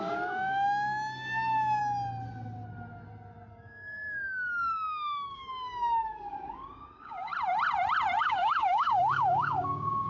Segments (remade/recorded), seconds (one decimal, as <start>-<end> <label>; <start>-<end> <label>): 0.0-1.8 remade; 1.8-3.5 recorded; 3.5-7.3 remade; 7.3-8.2 recorded; 8.2-10.1 remade